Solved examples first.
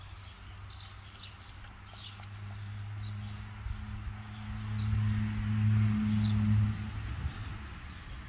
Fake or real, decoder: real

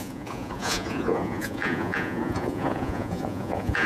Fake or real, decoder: fake, vocoder, Vocos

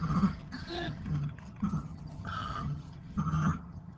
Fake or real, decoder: fake, vocoder, HiFi-GAN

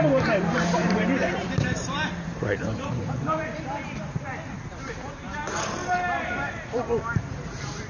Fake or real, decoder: fake, vocoder, BigVGAN v2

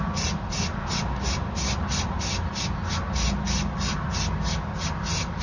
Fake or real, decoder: real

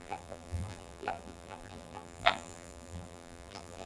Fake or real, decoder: fake, vocoder, BigVGAN v2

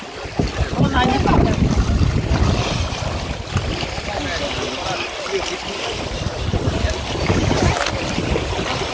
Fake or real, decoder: real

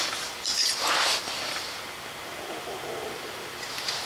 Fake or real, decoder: real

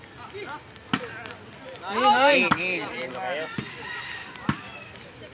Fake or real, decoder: real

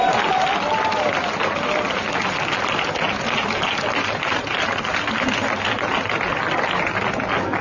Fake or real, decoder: real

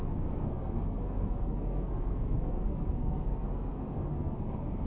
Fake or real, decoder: fake, codec, SNAC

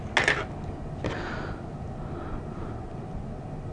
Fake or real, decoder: real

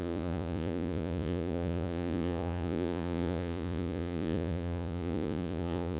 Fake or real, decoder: fake, vocoder, Vocos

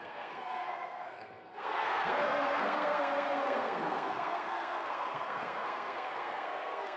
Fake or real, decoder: fake, codec, SNAC